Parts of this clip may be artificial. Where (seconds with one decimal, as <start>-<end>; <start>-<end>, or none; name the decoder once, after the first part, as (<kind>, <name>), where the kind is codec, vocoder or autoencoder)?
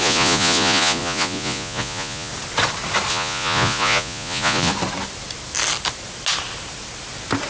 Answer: 0.0-2.3 (vocoder, Vocos); 3.1-4.7